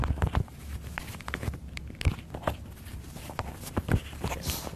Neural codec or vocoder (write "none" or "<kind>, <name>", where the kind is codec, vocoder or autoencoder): none